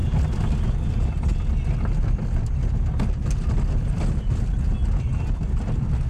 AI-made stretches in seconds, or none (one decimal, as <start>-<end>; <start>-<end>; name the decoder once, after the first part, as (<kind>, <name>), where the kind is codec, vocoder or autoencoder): none